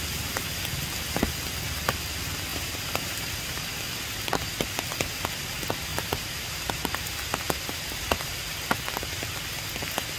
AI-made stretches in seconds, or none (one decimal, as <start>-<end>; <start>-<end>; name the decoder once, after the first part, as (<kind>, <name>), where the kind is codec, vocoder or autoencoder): 2.5-3.3 (vocoder, BigVGAN v2); 5.9-8.7